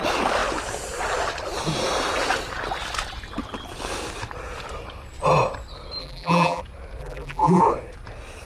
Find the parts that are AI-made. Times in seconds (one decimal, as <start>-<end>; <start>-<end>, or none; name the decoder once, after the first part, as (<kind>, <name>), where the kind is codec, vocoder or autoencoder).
6.0-6.6 (vocoder, BigVGAN v2); 7.0-7.6

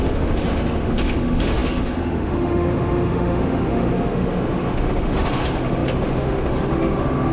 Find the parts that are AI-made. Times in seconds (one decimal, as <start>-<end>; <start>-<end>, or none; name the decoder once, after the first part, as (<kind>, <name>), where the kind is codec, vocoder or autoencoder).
0.0-7.3 (autoencoder, DAC-VAE)

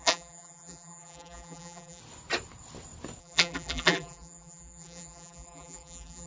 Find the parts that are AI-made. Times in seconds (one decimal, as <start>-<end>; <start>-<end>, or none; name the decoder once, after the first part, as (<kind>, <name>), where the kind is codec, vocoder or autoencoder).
0.0-2.0 (vocoder, BigVGAN v2); 3.2-6.3

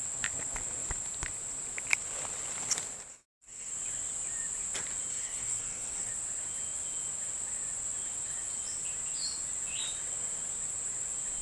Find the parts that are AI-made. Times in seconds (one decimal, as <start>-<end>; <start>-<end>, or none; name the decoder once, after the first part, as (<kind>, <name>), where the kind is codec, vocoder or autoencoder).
3.1-3.7 (codec, SNAC); 5.1-6.1

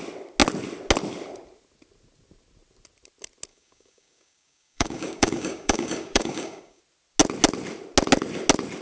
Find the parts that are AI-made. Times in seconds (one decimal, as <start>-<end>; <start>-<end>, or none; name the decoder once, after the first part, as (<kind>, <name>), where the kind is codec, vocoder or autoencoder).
3.5-6.8 (codec, DAC)

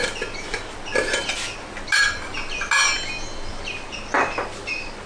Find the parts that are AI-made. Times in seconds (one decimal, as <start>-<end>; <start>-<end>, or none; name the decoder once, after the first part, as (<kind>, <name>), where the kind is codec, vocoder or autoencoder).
none

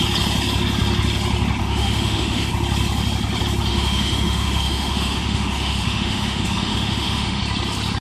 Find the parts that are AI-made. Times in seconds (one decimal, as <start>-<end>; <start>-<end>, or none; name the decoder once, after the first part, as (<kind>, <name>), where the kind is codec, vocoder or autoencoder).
1.6-2.5 (autoencoder, DAC-VAE); 3.7-7.4